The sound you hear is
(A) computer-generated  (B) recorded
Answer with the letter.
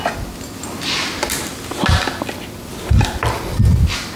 B